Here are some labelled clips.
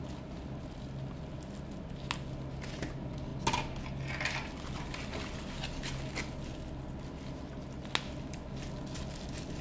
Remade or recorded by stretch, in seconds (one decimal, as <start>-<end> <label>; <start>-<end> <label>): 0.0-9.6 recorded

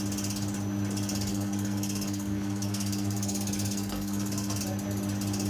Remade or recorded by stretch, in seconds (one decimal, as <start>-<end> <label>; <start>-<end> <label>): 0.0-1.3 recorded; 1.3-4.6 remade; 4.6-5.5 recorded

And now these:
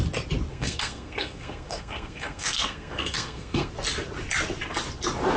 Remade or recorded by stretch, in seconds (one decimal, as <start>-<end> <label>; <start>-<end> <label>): 0.0-0.5 recorded; 0.5-3.7 remade; 3.7-5.4 recorded

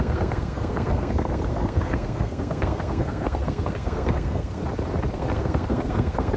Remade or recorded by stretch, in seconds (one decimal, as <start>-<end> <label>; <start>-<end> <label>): 0.0-4.6 remade; 4.6-5.1 recorded; 5.1-6.4 remade

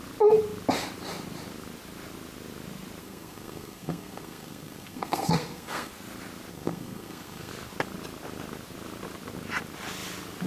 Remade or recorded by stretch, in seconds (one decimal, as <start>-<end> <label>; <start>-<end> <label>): 0.0-3.0 recorded; 3.0-5.9 remade; 5.9-6.5 recorded; 6.5-7.5 remade; 7.5-10.5 recorded